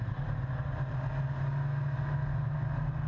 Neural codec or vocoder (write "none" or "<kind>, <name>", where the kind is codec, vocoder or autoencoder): none